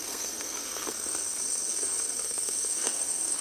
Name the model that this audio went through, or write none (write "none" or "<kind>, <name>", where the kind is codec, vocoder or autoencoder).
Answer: codec, SNAC